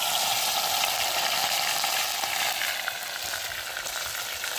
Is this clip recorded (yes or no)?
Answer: yes